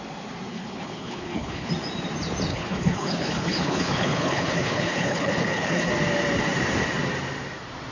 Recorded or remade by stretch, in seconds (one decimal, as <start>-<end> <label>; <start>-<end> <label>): 0.0-0.5 recorded; 0.5-1.7 remade; 1.7-2.5 recorded; 2.5-5.9 remade; 5.9-7.9 recorded